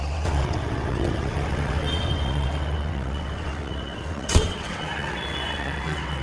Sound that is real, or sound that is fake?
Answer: fake